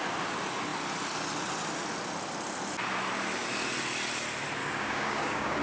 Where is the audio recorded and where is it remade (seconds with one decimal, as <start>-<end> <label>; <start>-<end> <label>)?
0.0-4.6 recorded; 4.6-5.6 remade